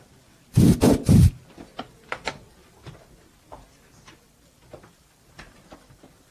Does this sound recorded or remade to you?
remade